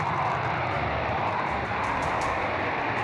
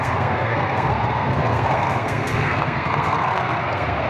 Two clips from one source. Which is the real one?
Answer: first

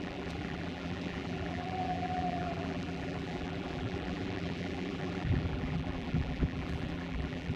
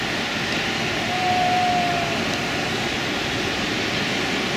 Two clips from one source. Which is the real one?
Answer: second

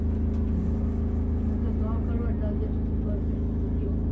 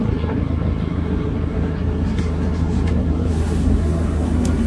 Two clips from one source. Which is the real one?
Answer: first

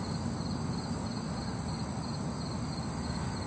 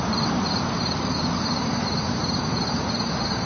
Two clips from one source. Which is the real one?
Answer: first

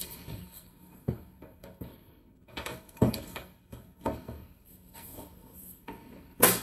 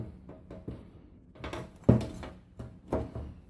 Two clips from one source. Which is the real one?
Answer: second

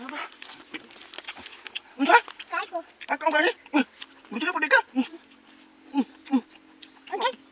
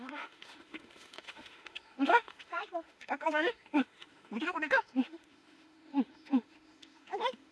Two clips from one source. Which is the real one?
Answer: first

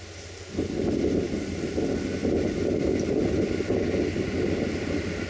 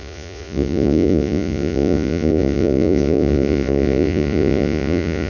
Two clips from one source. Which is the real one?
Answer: first